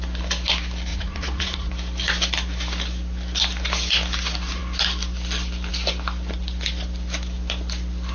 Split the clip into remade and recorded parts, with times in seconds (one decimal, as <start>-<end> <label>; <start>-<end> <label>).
0.0-0.9 recorded; 0.9-1.7 remade; 1.7-8.1 recorded